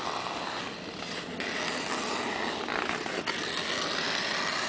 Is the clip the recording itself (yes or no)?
yes